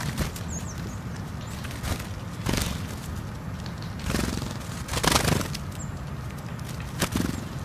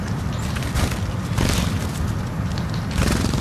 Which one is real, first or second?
first